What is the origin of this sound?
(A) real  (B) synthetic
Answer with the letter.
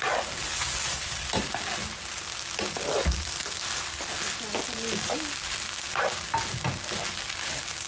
A